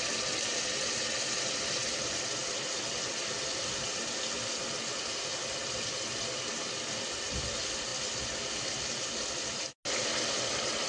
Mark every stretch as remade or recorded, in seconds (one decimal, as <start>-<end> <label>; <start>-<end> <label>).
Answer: 0.0-10.9 recorded